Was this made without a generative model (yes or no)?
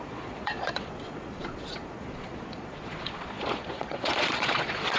no